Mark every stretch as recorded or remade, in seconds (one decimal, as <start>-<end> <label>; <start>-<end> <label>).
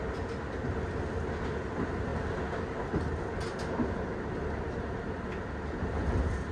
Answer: 0.0-6.5 recorded